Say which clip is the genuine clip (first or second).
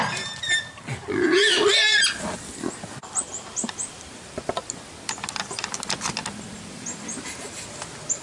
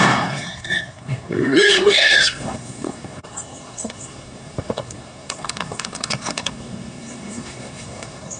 first